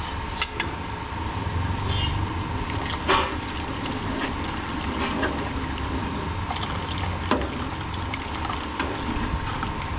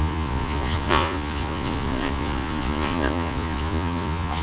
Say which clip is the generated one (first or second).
second